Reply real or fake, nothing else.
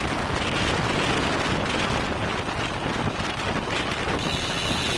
real